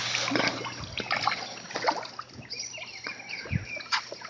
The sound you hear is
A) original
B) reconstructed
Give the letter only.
A